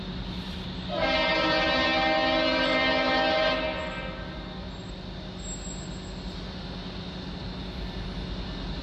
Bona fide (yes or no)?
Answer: yes